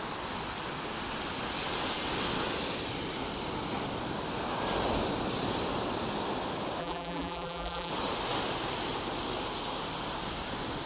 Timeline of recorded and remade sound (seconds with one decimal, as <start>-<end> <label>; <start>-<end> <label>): 0.0-6.8 recorded; 6.8-7.9 remade; 7.9-10.9 recorded